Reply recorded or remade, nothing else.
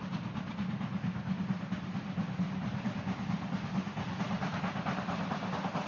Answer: recorded